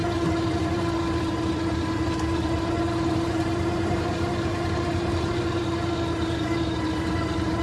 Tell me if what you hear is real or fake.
fake